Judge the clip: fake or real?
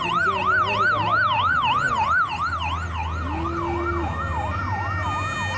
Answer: real